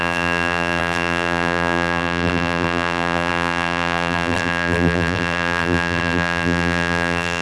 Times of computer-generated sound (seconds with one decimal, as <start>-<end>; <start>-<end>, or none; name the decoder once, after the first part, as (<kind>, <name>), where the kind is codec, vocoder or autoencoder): 0.0-7.4 (vocoder, BigVGAN v2)